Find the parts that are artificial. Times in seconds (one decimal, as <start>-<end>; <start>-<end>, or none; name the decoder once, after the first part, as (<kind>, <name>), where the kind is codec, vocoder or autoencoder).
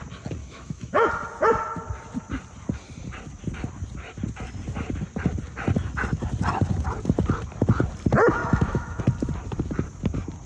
0.4-1.1 (autoencoder, DAC-VAE); 8.4-9.0